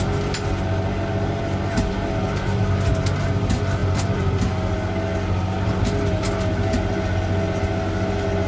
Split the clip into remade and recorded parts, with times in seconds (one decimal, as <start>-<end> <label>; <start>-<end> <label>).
0.0-3.8 recorded; 3.8-4.4 remade; 4.4-8.5 recorded